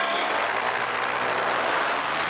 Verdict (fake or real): real